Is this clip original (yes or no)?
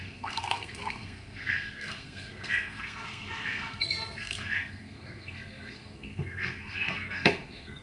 no